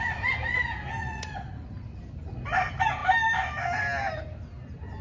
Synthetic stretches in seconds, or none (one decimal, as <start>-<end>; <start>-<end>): 1.0-2.0